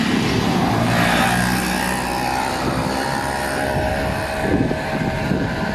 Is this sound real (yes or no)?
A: yes